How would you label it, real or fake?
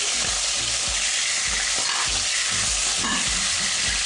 real